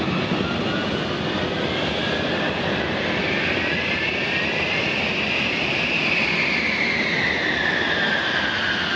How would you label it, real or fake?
real